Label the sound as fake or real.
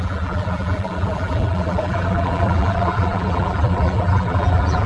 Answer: fake